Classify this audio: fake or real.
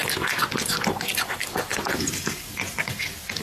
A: real